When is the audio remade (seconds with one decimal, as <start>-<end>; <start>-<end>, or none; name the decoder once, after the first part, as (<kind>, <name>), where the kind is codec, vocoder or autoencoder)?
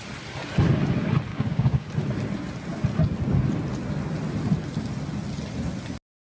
1.3-1.9 (codec, DAC)